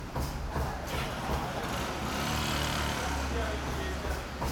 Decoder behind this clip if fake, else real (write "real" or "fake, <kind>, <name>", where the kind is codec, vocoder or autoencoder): real